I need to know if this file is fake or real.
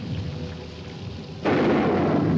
real